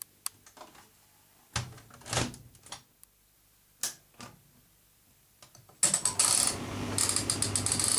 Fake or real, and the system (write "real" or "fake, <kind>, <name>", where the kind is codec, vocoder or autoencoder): real